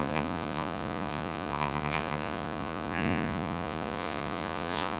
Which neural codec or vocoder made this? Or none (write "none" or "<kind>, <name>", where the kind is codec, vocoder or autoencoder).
vocoder, Vocos